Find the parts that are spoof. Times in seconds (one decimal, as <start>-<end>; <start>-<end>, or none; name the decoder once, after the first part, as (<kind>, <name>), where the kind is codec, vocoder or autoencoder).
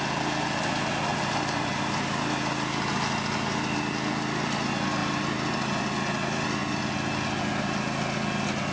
1.1-1.8 (vocoder, BigVGAN v2); 5.0-5.8